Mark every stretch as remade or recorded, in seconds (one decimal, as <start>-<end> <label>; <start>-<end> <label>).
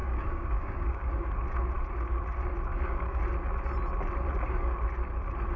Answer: 0.0-1.1 remade; 1.1-2.7 recorded; 2.7-3.2 remade; 3.2-5.6 recorded